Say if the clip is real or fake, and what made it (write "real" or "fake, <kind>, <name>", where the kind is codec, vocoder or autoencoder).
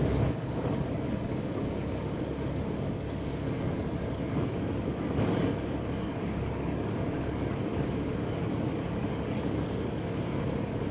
fake, codec, DAC